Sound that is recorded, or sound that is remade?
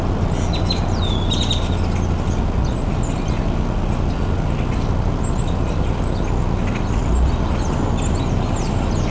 recorded